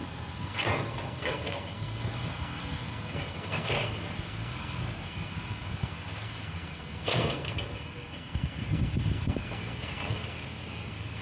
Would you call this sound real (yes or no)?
no